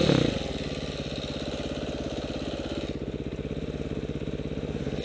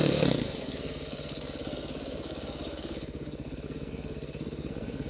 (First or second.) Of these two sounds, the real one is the first